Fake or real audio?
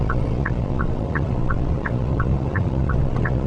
fake